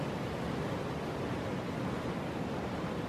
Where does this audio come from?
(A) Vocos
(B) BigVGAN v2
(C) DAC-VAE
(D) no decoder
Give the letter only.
D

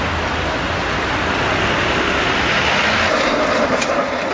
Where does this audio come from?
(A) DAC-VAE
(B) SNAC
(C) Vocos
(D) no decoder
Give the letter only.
D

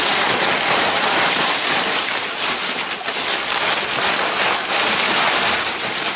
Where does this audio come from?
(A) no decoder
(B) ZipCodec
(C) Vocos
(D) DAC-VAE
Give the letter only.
A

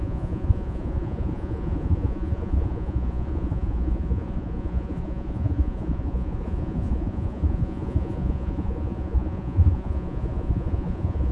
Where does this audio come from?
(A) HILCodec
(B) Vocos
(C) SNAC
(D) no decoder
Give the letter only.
B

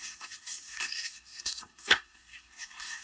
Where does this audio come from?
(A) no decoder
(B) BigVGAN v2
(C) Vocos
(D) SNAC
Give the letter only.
D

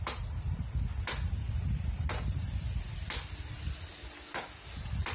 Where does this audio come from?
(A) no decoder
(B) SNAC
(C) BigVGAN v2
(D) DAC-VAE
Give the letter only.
A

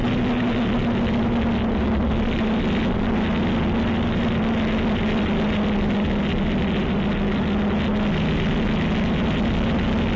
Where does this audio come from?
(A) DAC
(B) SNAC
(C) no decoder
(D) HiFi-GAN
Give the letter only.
C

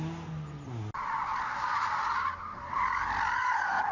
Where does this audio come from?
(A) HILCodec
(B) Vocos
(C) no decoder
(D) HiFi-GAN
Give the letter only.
C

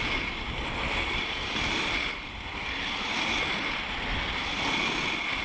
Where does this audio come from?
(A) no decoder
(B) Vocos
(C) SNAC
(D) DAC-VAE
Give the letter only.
A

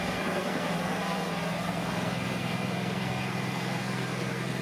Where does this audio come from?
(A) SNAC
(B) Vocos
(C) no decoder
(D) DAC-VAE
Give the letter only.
A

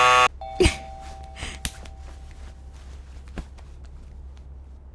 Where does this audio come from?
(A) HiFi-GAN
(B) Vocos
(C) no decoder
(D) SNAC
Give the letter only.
C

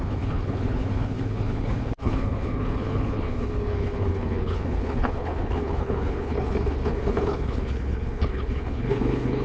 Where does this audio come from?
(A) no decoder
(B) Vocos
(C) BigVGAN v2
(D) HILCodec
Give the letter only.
D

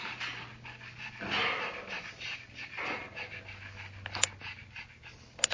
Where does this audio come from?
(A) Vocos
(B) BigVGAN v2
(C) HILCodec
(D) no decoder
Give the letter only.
D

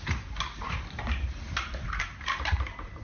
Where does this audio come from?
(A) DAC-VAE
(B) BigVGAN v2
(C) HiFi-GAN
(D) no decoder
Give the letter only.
B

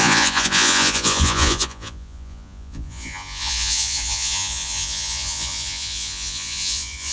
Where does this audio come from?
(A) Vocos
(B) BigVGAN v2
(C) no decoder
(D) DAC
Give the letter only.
A